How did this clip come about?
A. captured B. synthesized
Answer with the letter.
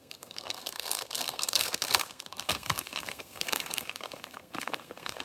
B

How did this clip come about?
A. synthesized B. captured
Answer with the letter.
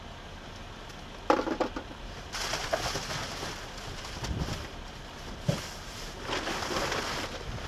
B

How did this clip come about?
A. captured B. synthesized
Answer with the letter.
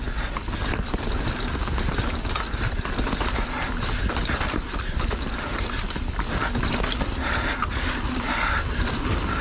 A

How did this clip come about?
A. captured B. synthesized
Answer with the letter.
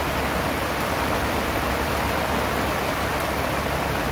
A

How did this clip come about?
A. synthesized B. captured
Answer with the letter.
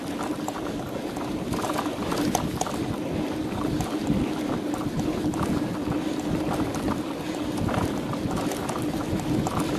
B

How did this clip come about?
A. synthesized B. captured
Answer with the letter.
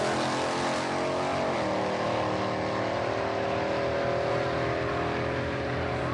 B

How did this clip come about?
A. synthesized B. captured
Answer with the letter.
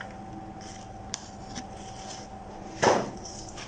B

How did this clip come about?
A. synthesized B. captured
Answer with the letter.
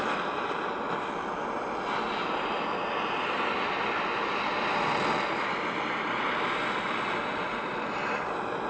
A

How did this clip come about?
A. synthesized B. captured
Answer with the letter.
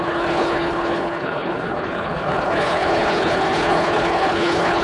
A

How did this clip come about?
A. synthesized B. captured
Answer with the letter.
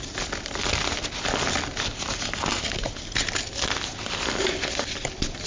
B